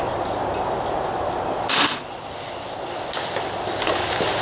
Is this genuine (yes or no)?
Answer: yes